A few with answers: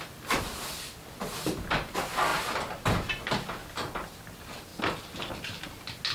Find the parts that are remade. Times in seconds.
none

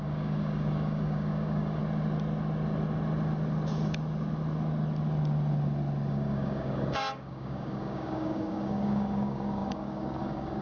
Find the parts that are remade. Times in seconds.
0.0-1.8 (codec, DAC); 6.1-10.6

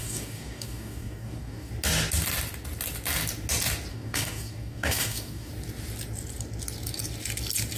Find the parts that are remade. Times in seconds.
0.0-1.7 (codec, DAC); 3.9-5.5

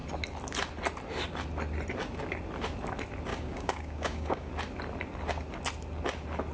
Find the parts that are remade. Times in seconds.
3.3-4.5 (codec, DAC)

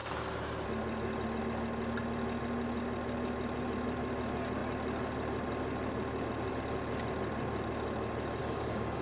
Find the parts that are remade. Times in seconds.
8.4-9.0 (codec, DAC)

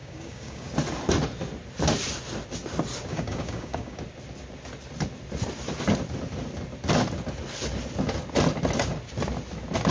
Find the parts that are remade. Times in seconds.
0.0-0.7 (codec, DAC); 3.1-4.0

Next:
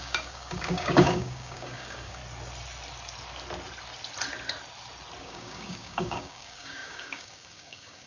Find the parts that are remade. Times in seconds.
0.0-2.2 (codec, DAC); 5.2-8.1

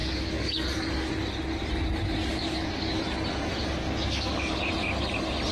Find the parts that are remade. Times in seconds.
0.0-1.1 (codec, DAC); 2.2-3.0; 3.8-4.7